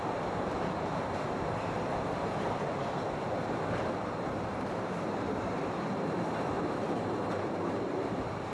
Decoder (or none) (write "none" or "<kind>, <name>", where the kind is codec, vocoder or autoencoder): vocoder, BigVGAN v2